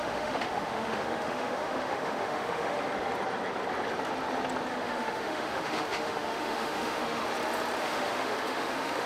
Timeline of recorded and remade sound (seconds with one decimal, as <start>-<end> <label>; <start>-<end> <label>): 0.0-2.8 remade; 2.8-4.7 recorded; 4.7-7.2 remade; 7.2-7.8 recorded; 7.8-9.1 remade